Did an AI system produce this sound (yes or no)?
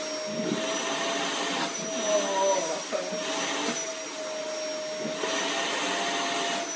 no